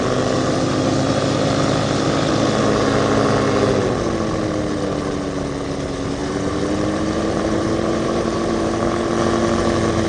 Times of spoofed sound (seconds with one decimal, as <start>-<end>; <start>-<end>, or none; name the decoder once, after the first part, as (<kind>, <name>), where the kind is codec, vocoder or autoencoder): 6.2-9.1 (vocoder, BigVGAN v2)